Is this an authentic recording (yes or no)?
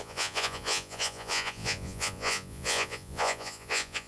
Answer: no